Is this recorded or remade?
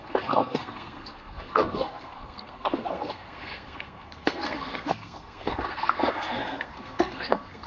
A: remade